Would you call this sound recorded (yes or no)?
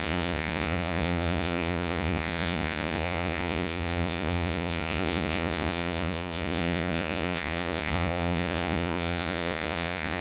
no